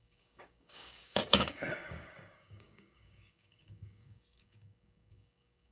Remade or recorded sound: remade